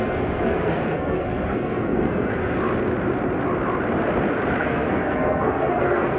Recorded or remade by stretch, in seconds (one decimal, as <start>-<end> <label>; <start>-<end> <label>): 0.0-2.3 remade; 2.3-4.6 recorded; 4.6-6.2 remade